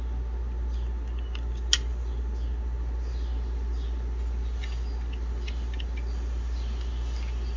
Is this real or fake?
real